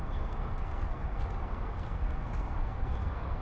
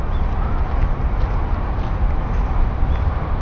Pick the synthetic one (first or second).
first